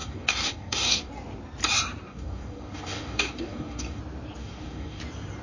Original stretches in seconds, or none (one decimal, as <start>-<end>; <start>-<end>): 1.1-2.1; 4.0-4.4; 5.0-5.4